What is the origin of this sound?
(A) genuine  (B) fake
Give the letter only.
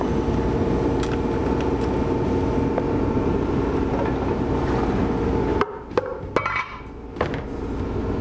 A